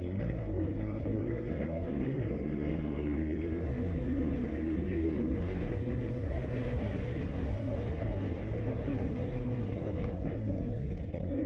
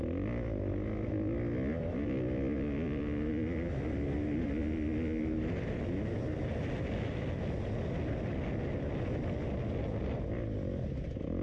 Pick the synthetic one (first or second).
first